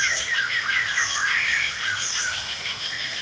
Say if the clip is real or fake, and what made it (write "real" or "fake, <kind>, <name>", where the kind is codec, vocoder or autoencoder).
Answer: fake, autoencoder, DAC-VAE